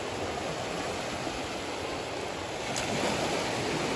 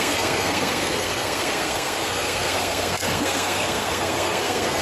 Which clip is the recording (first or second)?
first